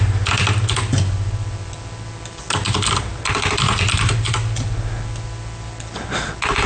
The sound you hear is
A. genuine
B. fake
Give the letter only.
A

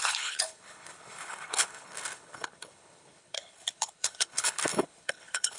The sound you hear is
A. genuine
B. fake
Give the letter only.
B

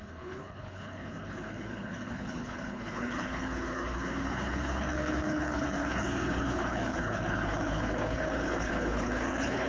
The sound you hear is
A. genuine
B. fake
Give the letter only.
B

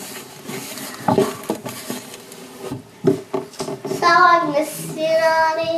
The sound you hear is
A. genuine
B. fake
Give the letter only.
A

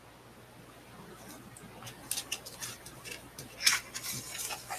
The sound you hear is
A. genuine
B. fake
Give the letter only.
A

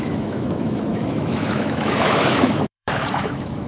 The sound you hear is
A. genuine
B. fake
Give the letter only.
B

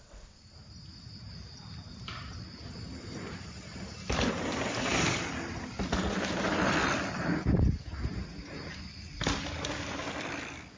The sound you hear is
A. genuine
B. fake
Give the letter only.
A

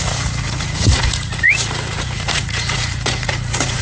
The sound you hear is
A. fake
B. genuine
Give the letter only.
A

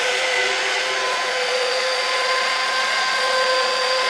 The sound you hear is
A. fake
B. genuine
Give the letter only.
A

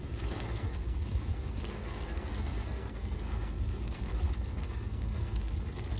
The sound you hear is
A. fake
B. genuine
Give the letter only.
A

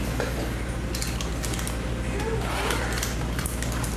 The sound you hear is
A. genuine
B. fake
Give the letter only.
A